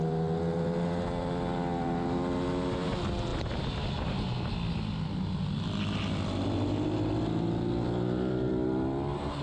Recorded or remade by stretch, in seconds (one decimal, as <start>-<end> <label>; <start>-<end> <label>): 0.0-9.4 recorded